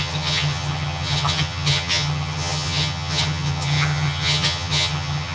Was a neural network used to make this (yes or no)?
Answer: yes